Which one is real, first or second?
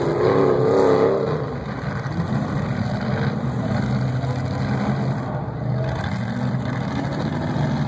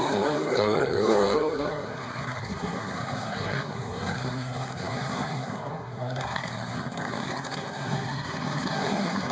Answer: first